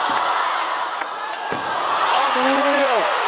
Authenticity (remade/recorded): remade